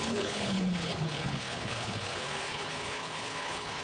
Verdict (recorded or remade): remade